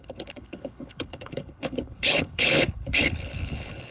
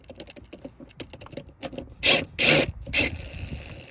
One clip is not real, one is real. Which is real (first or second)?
second